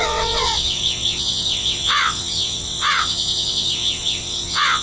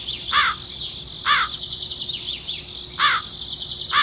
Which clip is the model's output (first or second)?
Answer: first